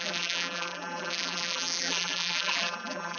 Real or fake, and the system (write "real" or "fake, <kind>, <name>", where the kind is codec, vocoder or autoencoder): fake, vocoder, BigVGAN v2